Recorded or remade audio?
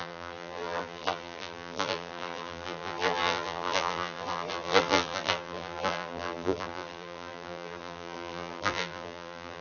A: remade